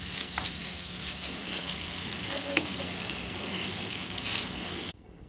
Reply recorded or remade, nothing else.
remade